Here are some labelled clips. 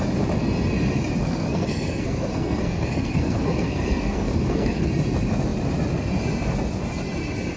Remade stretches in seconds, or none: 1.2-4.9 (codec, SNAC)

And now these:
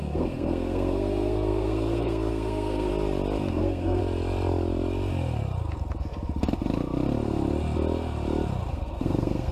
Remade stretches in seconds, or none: 0.0-2.9 (codec, SNAC); 3.5-4.0; 8.7-9.5

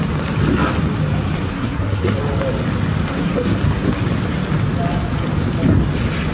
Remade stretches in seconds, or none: 1.5-2.2 (codec, SNAC); 3.1-3.9

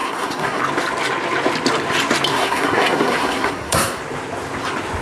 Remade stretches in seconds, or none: 0.0-0.6 (codec, SNAC); 2.3-4.0

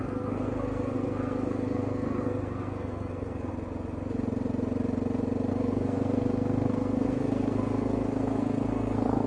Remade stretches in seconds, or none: 0.0-3.5 (codec, SNAC); 5.5-9.3

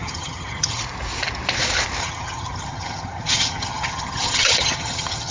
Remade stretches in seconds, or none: 0.0-0.8 (vocoder, HiFi-GAN); 2.0-5.3

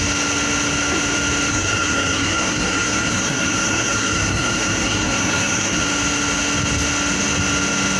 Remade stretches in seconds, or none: 1.5-5.8 (codec, SNAC)

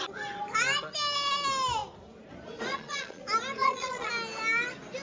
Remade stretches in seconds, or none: 2.7-3.2 (vocoder, Vocos); 3.6-4.1